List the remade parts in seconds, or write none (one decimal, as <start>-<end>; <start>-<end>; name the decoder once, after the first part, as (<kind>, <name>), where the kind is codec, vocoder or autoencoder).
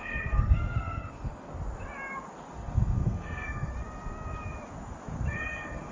0.0-1.5 (codec, SNAC); 2.5-3.7; 5.3-5.9